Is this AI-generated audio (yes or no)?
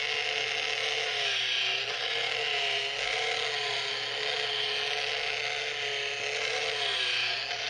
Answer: no